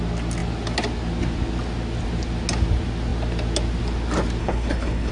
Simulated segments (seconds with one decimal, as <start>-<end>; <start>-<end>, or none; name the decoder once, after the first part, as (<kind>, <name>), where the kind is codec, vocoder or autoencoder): 4.4-5.1 (codec, HILCodec)